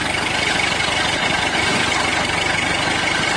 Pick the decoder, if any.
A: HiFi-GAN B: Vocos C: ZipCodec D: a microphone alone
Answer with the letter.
D